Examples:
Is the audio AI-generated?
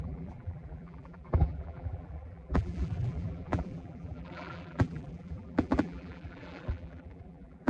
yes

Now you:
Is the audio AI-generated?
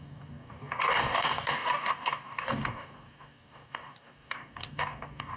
yes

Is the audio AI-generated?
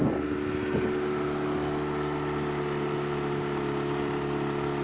no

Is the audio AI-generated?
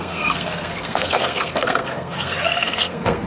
yes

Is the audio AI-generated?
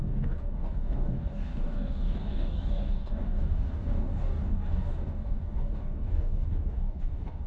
yes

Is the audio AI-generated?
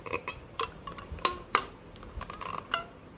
yes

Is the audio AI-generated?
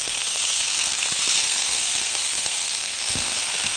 yes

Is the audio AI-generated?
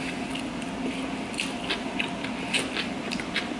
no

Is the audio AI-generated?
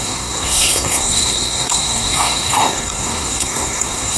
yes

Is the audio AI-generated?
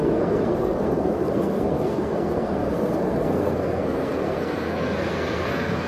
yes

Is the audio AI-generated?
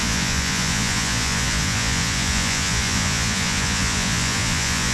yes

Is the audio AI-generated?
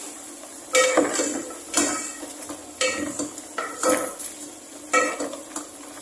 no